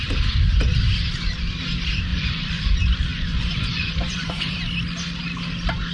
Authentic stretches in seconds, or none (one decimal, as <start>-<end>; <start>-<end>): 0.0-2.1; 2.7-3.1; 4.6-5.9